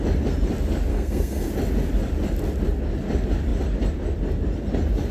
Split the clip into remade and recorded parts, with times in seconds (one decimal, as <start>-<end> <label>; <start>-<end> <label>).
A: 0.0-0.9 recorded; 0.9-1.5 remade; 1.5-5.1 recorded